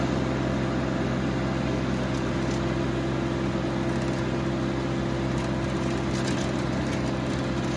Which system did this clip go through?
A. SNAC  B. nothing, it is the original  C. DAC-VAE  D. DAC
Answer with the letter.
B